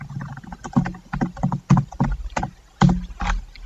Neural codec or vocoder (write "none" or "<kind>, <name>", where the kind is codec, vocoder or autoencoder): none